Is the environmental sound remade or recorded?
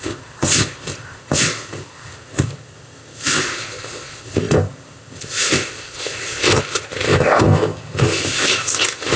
remade